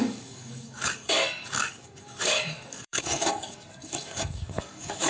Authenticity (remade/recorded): remade